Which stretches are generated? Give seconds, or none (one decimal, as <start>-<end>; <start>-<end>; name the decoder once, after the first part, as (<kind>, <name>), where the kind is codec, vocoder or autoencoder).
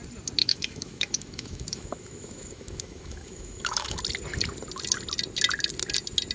0.4-4.0 (autoencoder, DAC-VAE)